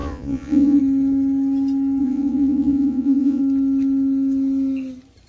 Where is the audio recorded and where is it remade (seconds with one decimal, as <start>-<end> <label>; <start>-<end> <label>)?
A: 0.0-0.8 remade; 0.8-2.0 recorded; 2.0-3.4 remade; 3.4-5.3 recorded